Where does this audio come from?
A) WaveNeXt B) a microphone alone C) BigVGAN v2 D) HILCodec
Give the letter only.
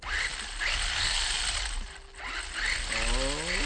B